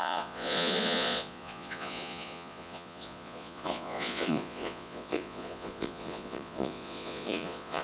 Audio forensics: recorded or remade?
remade